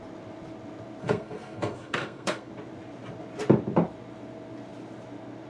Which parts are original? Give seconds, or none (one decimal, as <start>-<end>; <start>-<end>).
0.0-1.0; 2.5-5.5